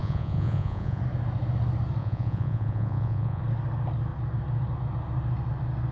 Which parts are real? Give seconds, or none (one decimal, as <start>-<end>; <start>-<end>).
1.0-2.0; 3.4-5.9